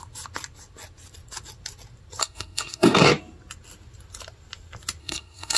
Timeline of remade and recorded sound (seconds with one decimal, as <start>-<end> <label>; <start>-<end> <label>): 0.0-2.2 recorded; 2.2-3.1 remade; 3.1-5.0 recorded; 5.0-5.6 remade